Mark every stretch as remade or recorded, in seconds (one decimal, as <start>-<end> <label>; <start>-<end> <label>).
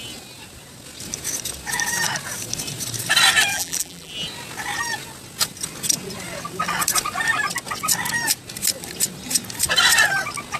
0.0-3.5 recorded; 3.5-4.1 remade; 4.1-10.6 recorded